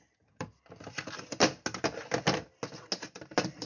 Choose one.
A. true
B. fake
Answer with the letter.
A